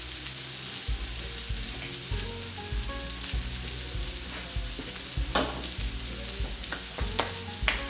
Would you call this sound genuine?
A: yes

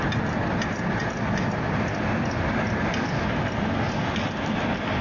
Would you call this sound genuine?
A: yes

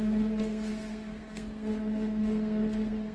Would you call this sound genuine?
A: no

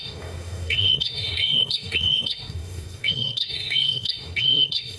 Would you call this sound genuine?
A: no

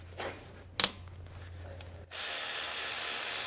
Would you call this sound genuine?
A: yes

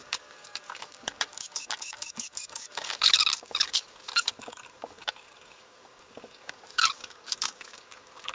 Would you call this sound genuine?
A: no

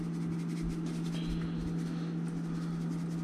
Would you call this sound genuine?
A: yes